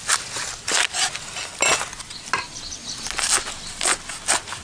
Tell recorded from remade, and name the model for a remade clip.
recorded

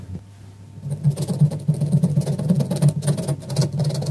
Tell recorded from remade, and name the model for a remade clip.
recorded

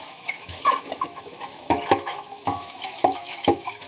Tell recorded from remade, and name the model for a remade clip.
remade, autoencoder, DAC-VAE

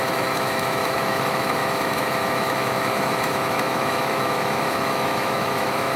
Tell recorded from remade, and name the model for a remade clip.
remade, autoencoder, DAC-VAE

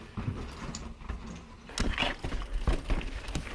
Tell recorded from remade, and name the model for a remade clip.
recorded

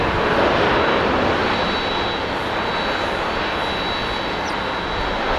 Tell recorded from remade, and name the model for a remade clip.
recorded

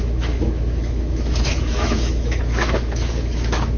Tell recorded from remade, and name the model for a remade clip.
remade, autoencoder, DAC-VAE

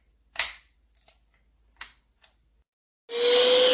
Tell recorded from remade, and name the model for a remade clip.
recorded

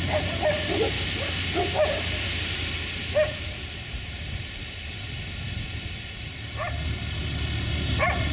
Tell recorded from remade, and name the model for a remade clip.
recorded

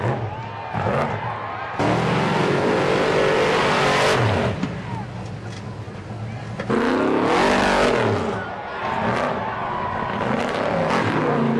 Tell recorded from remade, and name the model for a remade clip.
recorded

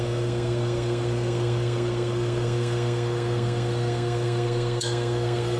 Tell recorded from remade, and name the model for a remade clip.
remade, codec, SNAC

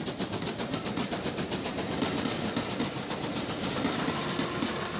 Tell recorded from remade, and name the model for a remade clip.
recorded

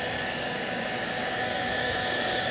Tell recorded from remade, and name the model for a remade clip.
remade, codec, DAC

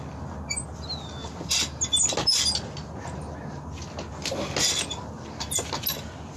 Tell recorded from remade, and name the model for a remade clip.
recorded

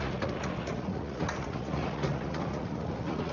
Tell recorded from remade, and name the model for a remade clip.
remade, vocoder, Vocos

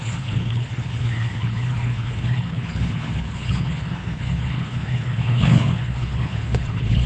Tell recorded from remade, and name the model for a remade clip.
remade, codec, HILCodec